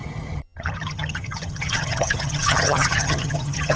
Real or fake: fake